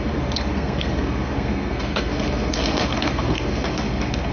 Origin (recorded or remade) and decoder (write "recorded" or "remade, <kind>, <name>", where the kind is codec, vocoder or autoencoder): remade, codec, SNAC